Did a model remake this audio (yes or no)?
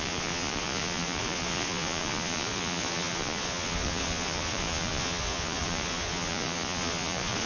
yes